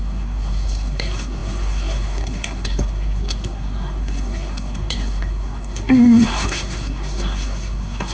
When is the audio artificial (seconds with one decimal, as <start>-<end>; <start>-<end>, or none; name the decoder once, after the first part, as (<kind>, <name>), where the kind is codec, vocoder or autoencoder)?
0.0-8.1 (codec, SNAC)